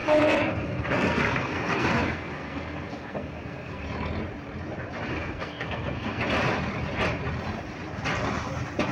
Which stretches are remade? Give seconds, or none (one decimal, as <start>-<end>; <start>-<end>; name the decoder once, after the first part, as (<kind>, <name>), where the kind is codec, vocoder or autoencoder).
0.0-3.8 (codec, SNAC); 5.1-6.2